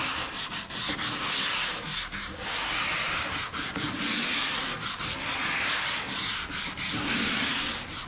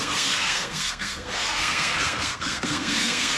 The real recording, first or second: first